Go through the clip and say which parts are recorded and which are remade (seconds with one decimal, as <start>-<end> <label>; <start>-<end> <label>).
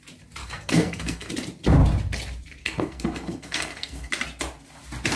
0.0-0.4 recorded; 0.4-1.3 remade; 1.3-2.6 recorded; 2.6-4.1 remade; 4.1-5.2 recorded